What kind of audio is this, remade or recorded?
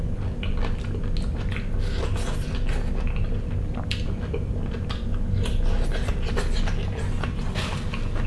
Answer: recorded